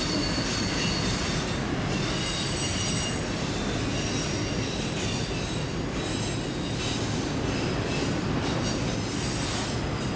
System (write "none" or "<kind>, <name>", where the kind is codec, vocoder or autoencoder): none